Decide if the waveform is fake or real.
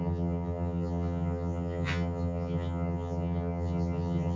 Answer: fake